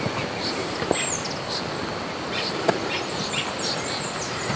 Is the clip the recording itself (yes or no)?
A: yes